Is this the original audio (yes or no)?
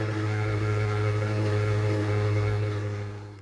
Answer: no